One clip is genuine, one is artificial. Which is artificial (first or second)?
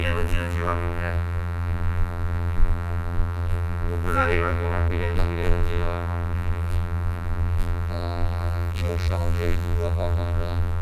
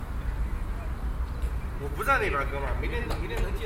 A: first